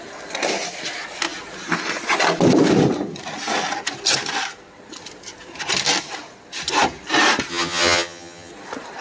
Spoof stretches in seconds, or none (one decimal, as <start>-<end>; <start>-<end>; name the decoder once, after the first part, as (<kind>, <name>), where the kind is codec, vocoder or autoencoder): 7.5-8.5 (vocoder, HiFi-GAN)